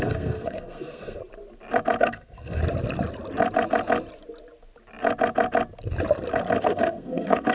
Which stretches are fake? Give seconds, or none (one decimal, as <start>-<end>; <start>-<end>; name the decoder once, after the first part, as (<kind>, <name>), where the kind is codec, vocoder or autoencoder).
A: 0.0-1.2 (codec, SNAC); 2.0-2.6; 6.6-7.5